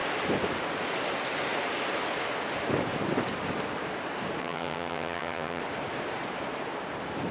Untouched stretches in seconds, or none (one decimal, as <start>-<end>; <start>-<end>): 0.0-4.4; 5.6-7.3